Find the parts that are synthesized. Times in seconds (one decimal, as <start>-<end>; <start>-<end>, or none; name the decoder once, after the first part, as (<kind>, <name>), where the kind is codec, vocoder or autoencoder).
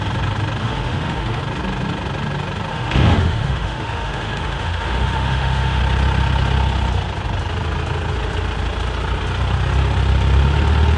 0.6-1.4 (autoencoder, DAC-VAE); 2.7-5.8